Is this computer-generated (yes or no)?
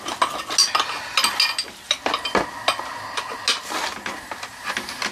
no